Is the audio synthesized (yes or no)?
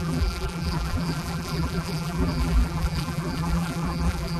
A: yes